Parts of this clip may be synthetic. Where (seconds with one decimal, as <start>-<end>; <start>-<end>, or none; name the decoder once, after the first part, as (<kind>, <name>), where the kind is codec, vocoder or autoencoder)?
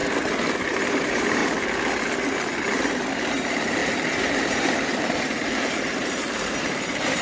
0.7-1.4 (vocoder, BigVGAN v2); 3.0-7.2